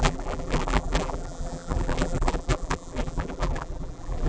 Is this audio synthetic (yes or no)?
yes